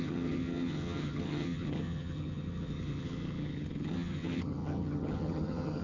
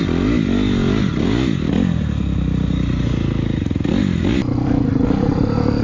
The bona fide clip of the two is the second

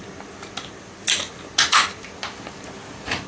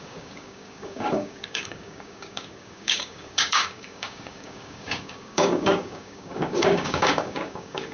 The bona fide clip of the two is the first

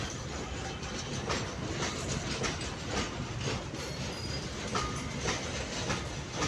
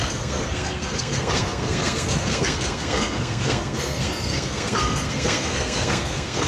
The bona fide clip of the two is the first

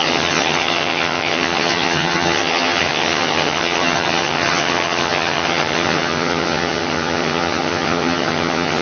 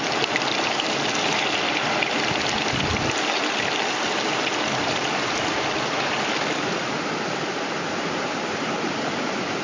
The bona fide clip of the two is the second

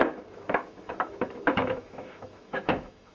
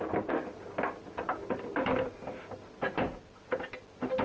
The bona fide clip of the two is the second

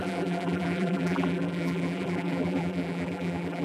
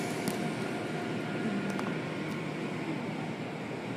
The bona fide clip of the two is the second